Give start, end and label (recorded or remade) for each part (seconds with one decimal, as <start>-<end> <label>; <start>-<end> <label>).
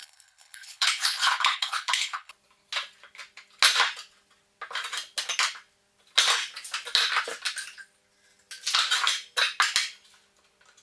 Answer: 0.0-2.3 remade; 2.3-10.8 recorded